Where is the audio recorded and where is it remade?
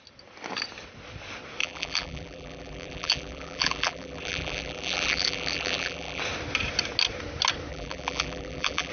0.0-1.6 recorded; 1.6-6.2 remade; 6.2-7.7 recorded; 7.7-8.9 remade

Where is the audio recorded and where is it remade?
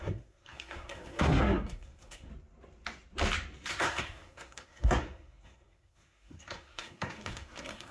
0.0-2.3 remade; 2.3-3.7 recorded; 3.7-7.9 remade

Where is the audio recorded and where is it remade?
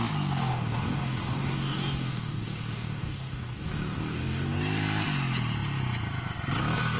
0.0-0.4 recorded; 0.4-4.6 remade; 4.6-7.0 recorded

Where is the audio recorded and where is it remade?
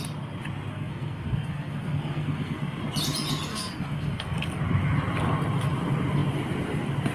0.0-0.7 recorded; 0.7-2.8 remade; 2.8-3.5 recorded; 3.5-4.6 remade; 4.6-7.1 recorded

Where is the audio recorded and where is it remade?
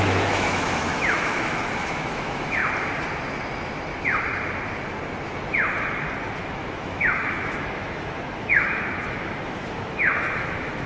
0.0-2.6 remade; 2.6-6.4 recorded; 6.4-10.9 remade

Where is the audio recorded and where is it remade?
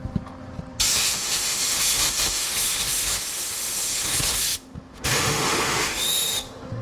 0.0-0.9 recorded; 0.9-6.8 remade